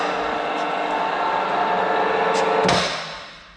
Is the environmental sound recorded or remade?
recorded